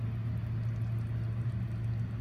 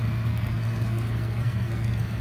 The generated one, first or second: second